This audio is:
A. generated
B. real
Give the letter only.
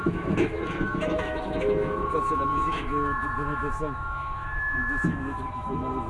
A